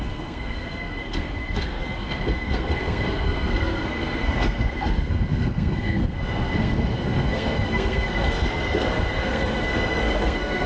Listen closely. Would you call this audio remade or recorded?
remade